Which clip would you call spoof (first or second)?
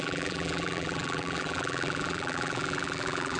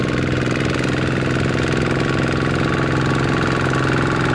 first